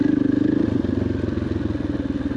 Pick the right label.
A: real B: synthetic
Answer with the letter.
A